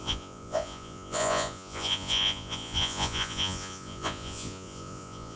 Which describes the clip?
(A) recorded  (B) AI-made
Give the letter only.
B